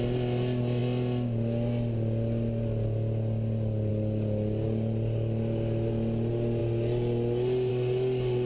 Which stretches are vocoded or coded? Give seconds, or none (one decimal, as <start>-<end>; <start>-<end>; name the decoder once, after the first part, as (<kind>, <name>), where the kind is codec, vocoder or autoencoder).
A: none